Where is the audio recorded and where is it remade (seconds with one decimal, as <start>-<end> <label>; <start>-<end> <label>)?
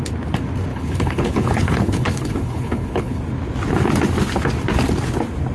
0.0-0.7 recorded; 0.7-3.2 remade; 3.2-5.5 recorded